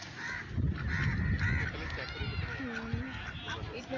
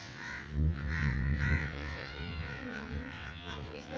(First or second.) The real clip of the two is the first